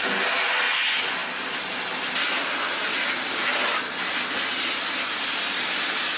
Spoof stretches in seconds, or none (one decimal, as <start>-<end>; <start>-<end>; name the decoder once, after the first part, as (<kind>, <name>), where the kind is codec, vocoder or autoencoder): none